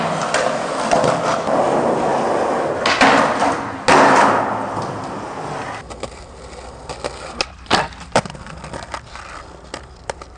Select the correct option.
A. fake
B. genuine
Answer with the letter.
B